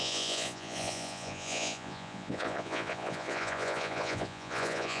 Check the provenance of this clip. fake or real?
fake